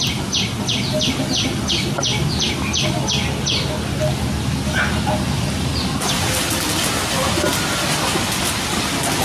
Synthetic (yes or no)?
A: no